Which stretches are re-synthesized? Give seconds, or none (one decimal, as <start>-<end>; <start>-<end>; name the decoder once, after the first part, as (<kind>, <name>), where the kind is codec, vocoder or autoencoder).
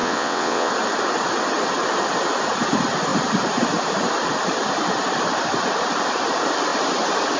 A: 0.0-0.7 (vocoder, WaveNeXt)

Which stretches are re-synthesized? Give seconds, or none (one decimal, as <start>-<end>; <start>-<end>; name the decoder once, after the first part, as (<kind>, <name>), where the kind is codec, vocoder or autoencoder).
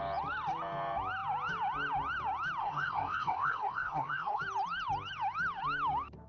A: 2.6-4.4 (codec, SNAC)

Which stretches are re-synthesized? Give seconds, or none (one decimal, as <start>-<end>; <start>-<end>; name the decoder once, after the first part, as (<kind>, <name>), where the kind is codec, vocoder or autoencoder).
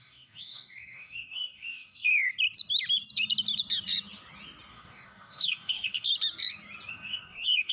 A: 0.0-2.3 (codec, DAC); 4.7-6.1; 6.9-7.7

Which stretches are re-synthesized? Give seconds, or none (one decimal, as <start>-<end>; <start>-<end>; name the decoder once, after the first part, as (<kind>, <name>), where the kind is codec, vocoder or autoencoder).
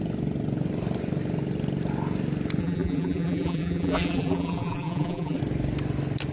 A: 2.6-5.4 (vocoder, BigVGAN v2)